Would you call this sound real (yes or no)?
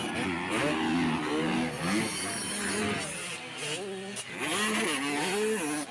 yes